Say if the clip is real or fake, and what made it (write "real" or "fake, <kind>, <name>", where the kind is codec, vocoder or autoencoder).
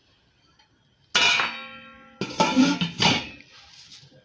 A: real